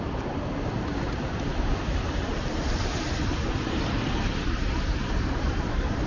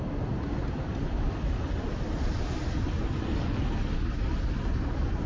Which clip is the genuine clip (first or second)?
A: second